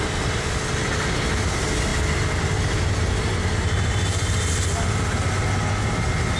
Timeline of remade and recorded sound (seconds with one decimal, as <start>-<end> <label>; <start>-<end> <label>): 0.0-6.4 recorded

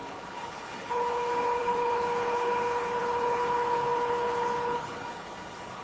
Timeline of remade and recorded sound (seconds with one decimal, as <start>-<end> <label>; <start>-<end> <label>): 0.0-5.8 remade